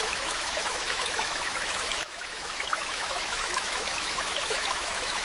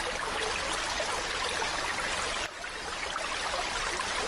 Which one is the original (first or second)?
second